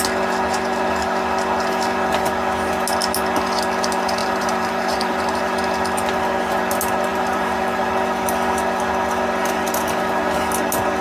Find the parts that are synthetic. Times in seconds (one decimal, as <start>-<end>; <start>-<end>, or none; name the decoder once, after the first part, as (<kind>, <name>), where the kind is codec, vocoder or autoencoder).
4.2-5.4 (vocoder, BigVGAN v2); 7.1-7.9